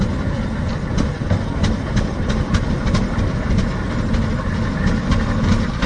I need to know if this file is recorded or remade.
recorded